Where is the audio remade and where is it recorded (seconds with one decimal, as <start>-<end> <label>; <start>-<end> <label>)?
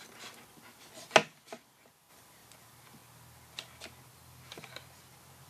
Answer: 0.0-5.5 recorded